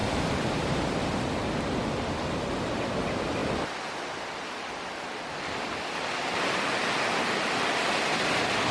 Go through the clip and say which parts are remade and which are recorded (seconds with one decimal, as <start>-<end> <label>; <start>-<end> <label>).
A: 0.0-8.7 recorded